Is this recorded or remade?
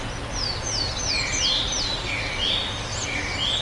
recorded